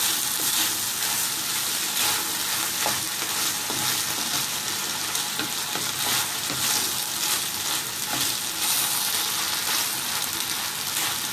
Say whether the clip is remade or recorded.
recorded